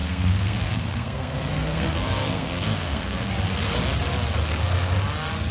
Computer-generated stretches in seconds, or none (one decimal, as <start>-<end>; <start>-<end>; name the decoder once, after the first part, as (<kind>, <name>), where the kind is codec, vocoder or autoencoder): 0.0-3.3 (codec, SNAC); 4.4-5.0